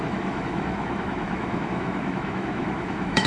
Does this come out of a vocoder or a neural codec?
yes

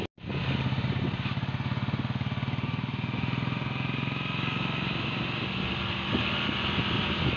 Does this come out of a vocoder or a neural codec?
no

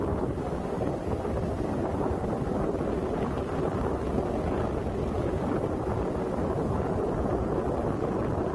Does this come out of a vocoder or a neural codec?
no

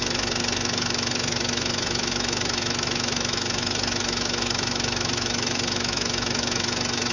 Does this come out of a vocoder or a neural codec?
yes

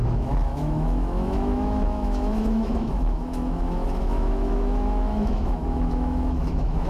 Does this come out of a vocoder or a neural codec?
yes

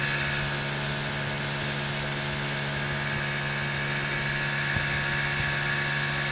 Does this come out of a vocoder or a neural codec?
no